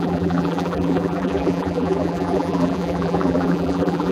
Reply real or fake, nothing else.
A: fake